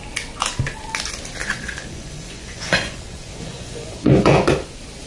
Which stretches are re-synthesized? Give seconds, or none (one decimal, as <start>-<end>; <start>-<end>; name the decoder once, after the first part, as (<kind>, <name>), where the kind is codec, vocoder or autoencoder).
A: 1.4-4.5 (vocoder, Vocos)